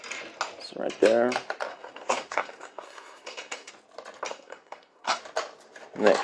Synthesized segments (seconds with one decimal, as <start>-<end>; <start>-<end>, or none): 1.7-3.7; 4.3-5.2